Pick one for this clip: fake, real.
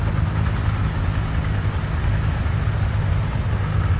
real